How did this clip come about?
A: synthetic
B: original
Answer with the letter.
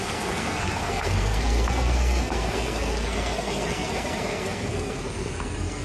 A